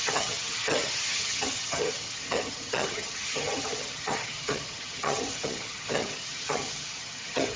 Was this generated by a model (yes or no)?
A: yes